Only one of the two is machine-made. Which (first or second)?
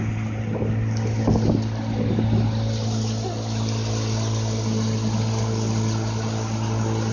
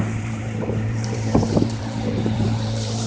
second